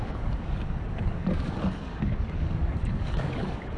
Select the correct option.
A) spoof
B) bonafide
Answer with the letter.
A